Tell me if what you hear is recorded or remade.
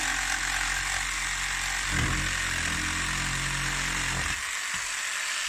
recorded